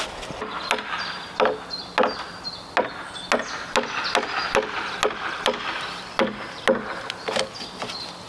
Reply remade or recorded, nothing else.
recorded